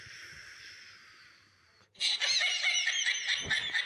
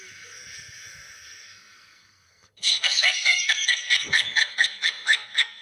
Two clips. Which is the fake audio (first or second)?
second